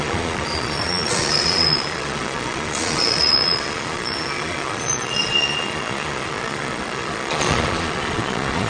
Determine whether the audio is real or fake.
fake